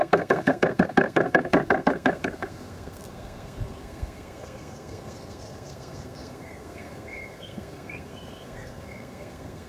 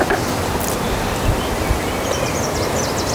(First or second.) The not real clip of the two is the first